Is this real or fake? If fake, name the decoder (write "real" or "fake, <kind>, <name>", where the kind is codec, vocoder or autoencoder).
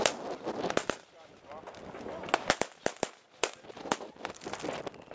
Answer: real